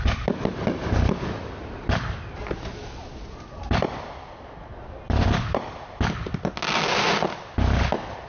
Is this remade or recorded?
recorded